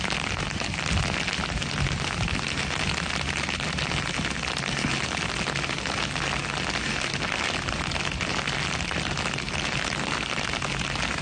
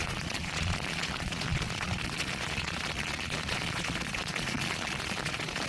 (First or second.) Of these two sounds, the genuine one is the first